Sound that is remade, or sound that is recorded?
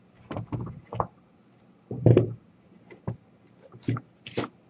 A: recorded